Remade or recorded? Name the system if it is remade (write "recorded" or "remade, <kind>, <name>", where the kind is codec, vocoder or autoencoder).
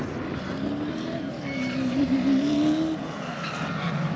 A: recorded